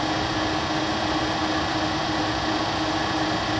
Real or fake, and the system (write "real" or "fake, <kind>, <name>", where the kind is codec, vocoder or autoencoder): real